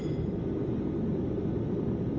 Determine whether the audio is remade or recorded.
recorded